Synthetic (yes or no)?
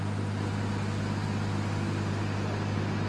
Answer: no